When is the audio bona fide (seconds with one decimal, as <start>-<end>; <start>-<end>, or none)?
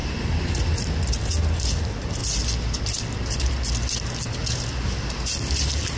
0.0-6.0